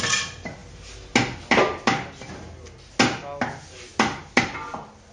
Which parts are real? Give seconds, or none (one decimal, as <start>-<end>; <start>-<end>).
0.0-5.1